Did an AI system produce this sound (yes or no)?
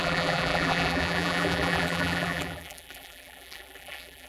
yes